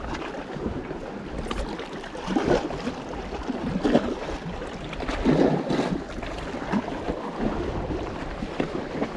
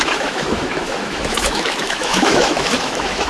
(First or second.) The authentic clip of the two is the first